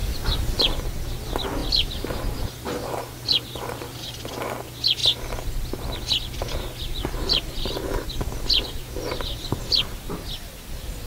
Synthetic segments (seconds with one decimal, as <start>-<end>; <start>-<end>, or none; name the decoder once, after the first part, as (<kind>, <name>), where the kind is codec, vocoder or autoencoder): 0.0-0.6 (vocoder, BigVGAN v2); 1.6-4.3; 6.9-9.6